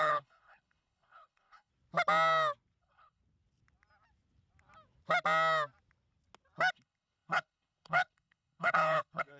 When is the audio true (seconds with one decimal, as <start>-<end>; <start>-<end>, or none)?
1.7-2.8; 3.2-6.7